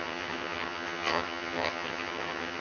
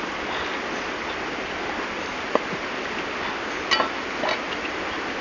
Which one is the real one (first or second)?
second